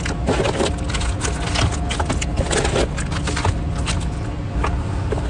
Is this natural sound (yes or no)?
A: yes